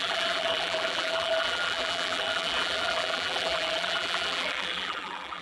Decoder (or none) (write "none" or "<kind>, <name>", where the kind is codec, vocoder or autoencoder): vocoder, BigVGAN v2